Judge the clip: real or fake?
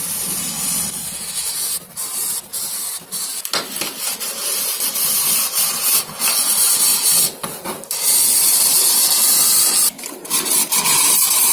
real